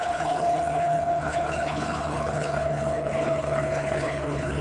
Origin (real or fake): fake